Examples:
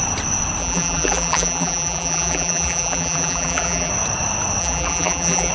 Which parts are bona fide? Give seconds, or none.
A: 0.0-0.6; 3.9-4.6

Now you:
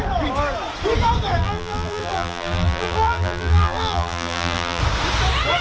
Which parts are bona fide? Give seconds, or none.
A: 0.0-1.4; 4.8-5.6

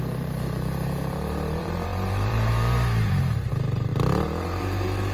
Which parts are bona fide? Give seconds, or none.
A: 3.9-4.4